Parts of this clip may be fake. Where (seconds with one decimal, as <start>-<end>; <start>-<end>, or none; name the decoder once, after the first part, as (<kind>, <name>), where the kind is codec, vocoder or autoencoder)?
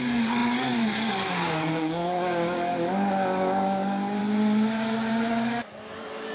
0.0-4.2 (codec, DAC); 5.3-6.3